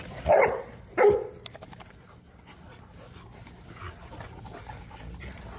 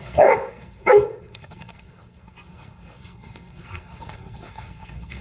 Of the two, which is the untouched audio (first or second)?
first